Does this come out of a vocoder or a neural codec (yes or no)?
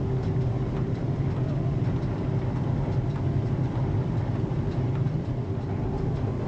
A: yes